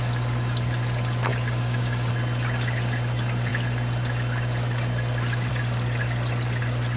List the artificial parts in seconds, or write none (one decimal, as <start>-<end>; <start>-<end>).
1.3-2.1